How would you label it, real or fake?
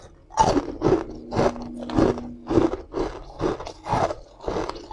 real